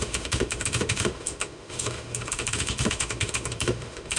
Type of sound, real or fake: fake